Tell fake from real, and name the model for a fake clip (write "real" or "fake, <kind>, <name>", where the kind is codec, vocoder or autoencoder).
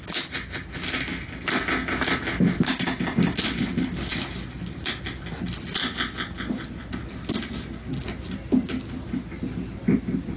real